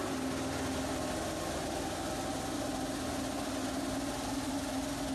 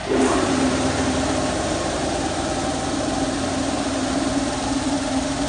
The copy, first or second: second